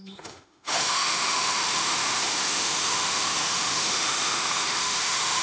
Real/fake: fake